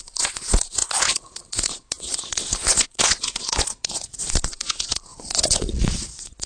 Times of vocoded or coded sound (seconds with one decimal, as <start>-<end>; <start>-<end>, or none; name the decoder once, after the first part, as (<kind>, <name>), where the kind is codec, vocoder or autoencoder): 0.0-6.5 (vocoder, Vocos)